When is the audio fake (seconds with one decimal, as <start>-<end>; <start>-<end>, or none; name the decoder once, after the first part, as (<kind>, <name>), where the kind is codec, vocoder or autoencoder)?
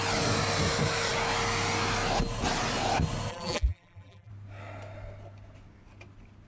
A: 3.3-4.3 (vocoder, BigVGAN v2)